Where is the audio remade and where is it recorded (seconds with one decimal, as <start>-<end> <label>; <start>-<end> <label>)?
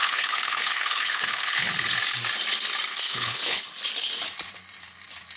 0.0-1.7 remade; 1.7-2.9 recorded; 2.9-3.6 remade; 3.6-5.4 recorded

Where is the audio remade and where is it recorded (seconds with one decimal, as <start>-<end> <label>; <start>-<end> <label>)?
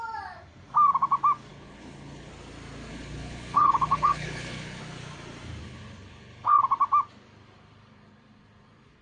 0.0-1.5 recorded; 1.5-2.3 remade; 2.3-2.9 recorded; 2.9-4.8 remade; 4.8-5.6 recorded; 5.6-6.6 remade; 6.6-9.0 recorded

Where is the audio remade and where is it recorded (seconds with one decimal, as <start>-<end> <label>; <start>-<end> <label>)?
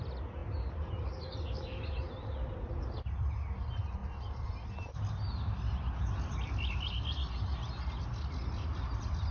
0.0-9.3 recorded